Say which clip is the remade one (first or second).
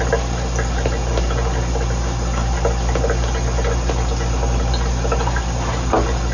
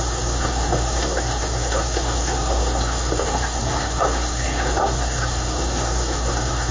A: second